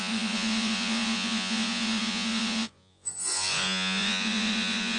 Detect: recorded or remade remade